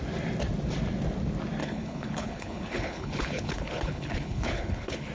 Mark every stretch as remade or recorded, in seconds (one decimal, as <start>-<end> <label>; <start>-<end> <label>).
0.0-1.6 recorded; 1.6-5.1 remade